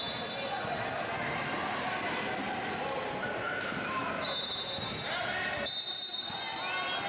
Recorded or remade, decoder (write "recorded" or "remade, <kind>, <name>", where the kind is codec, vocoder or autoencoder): recorded